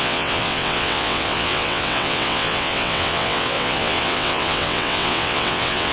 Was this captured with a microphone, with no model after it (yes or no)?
no